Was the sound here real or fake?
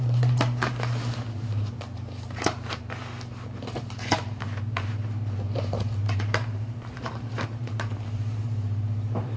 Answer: fake